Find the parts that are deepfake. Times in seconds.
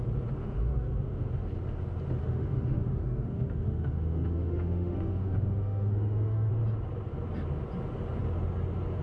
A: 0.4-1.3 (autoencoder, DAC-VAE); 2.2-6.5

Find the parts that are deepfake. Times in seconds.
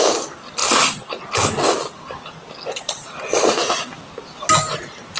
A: none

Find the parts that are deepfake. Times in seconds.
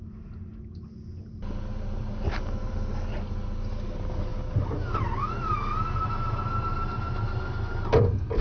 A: none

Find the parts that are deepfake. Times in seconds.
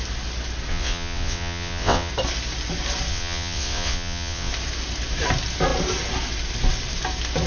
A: 0.7-2.1 (vocoder, WaveNeXt); 3.1-4.5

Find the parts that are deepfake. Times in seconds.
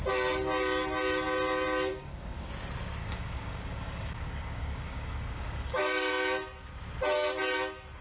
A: 1.9-2.5 (codec, DAC); 3.0-6.1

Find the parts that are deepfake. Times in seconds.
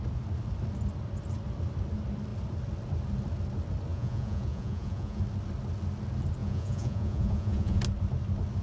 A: 3.9-5.2 (vocoder, Vocos); 6.4-7.8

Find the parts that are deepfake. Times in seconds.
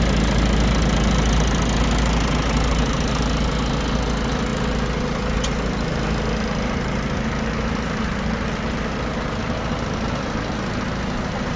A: none